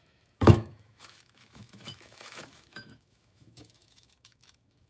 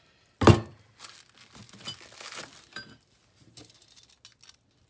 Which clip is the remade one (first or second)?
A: first